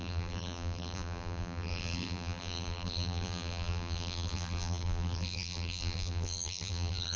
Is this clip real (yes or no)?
no